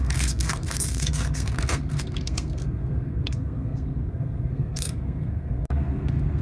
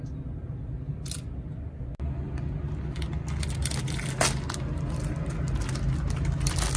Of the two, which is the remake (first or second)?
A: first